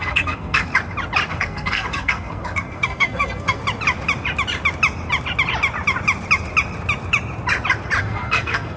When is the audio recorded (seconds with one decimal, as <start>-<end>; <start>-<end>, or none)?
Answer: 0.7-1.3; 3.6-8.0